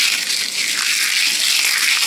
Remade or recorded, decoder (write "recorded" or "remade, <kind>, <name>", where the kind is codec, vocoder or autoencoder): recorded